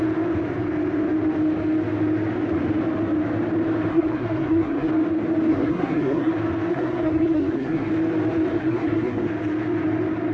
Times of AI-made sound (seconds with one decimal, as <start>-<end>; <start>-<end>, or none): 3.9-4.9; 5.5-6.3; 6.7-7.9; 8.5-9.3

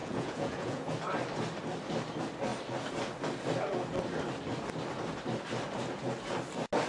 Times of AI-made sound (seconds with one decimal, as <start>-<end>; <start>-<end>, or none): 0.0-0.9